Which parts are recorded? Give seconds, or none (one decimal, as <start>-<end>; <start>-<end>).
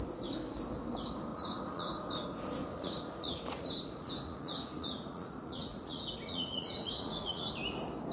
0.0-1.3; 2.1-2.6; 7.5-8.1